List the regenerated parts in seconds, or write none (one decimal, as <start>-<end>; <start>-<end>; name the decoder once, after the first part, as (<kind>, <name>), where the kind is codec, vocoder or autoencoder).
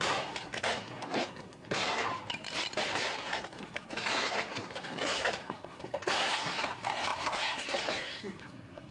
0.0-2.1 (codec, SNAC); 3.1-8.9